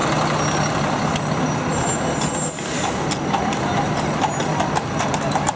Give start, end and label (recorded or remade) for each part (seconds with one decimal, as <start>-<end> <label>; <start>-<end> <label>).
0.0-5.6 recorded